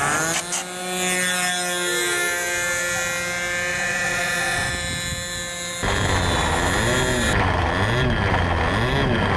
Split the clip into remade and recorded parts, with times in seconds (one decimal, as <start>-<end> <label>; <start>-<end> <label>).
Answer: 0.0-3.7 recorded; 3.7-4.7 remade; 4.7-9.4 recorded